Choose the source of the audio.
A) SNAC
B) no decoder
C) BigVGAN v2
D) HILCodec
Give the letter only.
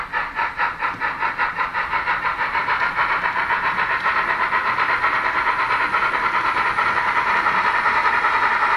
B